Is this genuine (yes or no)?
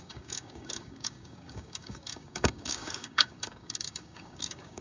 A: no